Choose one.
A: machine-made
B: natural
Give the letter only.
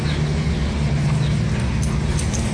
B